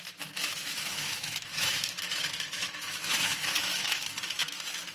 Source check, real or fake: fake